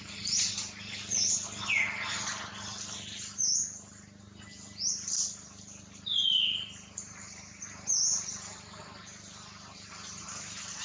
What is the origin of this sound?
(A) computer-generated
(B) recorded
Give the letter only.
B